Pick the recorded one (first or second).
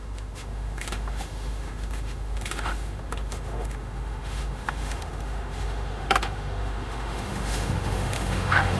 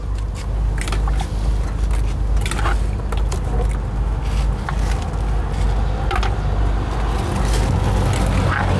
second